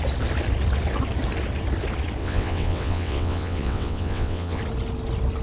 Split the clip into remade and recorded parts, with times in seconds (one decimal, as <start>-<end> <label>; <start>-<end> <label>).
0.0-2.2 recorded; 2.2-4.6 remade; 4.6-5.4 recorded